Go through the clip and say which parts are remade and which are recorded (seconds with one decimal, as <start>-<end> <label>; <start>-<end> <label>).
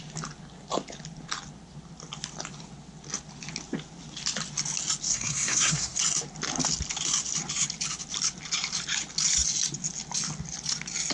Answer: 0.0-5.1 recorded; 5.1-6.0 remade; 6.0-11.1 recorded